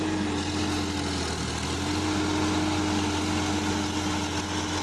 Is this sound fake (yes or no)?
no